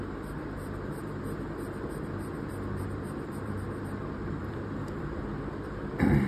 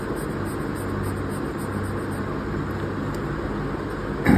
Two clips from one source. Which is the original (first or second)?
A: second